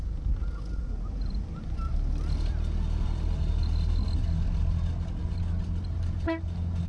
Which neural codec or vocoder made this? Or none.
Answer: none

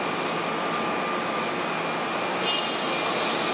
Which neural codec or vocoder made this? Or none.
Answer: none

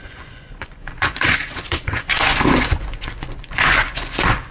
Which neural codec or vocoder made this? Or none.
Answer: vocoder, Vocos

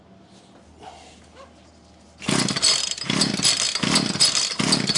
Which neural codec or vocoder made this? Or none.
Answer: none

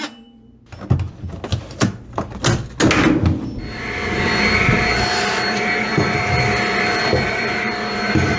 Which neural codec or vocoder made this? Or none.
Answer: none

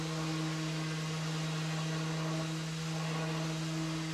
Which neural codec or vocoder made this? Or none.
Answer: none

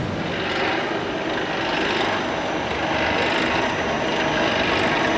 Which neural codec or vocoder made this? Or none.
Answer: none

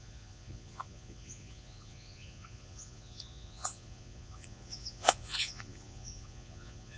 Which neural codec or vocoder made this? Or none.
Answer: vocoder, Vocos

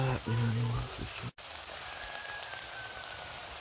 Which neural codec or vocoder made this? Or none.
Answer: none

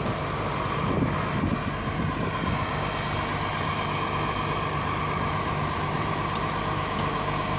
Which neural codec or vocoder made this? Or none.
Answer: none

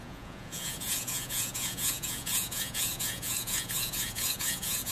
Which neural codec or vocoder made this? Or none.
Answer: vocoder, Vocos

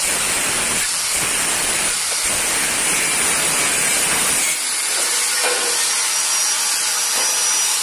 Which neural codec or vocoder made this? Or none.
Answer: none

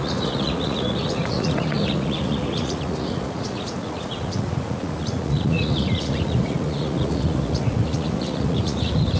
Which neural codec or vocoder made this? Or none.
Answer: vocoder, Vocos